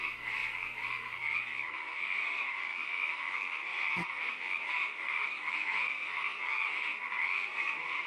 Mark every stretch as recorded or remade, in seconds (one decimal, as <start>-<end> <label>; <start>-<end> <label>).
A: 0.0-8.1 remade